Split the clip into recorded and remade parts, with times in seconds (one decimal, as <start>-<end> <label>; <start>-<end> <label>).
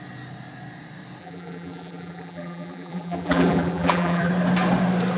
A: 0.0-1.2 recorded; 1.2-4.3 remade; 4.3-5.2 recorded